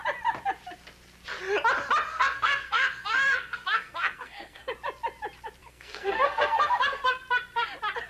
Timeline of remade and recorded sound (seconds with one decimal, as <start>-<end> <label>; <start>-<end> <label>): 0.0-2.1 recorded; 2.1-4.7 remade; 4.7-5.6 recorded; 5.6-7.2 remade; 7.2-8.1 recorded